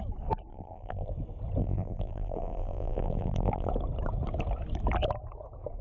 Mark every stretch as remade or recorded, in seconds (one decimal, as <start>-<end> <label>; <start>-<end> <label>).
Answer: 0.0-0.5 recorded; 0.5-1.1 remade; 1.1-1.6 recorded; 1.6-3.7 remade; 3.7-5.8 recorded